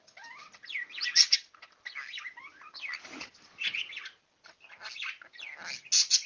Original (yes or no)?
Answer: yes